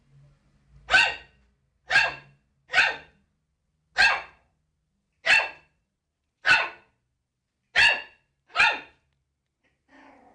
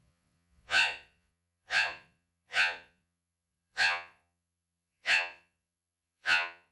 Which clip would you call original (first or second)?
first